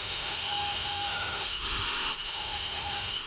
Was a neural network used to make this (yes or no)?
yes